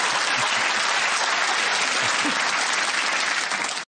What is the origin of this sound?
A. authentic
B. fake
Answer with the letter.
A